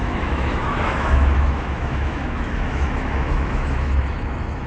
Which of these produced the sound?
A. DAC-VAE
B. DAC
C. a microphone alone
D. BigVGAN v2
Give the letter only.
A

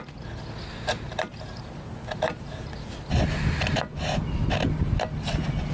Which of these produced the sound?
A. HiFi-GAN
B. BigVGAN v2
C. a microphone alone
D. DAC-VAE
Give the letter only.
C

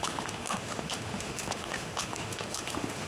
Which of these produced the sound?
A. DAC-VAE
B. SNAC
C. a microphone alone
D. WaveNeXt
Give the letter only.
A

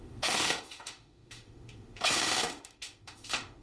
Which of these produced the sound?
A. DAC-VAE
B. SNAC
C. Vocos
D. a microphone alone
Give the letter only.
A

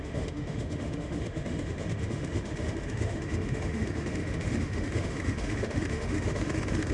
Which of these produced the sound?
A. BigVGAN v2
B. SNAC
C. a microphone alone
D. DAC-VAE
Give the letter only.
D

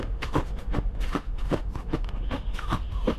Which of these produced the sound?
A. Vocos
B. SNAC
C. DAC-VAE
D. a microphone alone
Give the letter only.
C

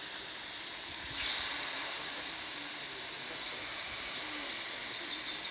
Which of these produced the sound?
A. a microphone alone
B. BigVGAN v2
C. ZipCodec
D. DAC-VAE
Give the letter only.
A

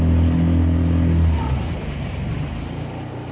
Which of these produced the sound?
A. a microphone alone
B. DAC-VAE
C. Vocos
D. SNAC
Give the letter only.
A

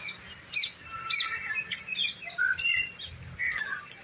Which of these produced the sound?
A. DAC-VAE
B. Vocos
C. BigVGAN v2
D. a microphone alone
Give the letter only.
D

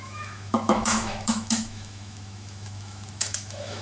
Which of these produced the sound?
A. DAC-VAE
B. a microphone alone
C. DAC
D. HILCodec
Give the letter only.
A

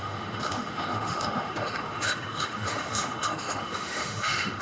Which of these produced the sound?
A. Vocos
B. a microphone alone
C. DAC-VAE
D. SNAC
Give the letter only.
C